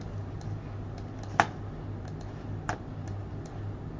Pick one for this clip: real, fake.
real